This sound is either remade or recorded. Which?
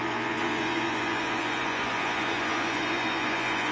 remade